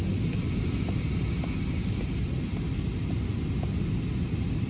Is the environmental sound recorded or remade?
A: recorded